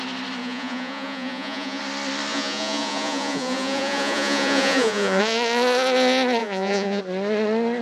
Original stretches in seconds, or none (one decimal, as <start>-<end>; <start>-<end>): 0.0-0.4; 1.8-2.3; 5.2-6.4; 7.0-7.8